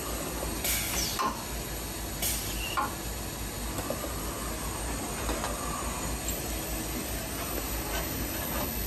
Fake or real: real